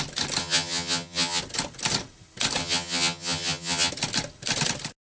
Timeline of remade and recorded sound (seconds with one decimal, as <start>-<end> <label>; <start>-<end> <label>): 0.0-0.4 recorded; 0.4-1.4 remade; 1.4-2.6 recorded; 2.6-3.9 remade; 3.9-5.1 recorded